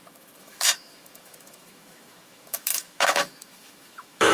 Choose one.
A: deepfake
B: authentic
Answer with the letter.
A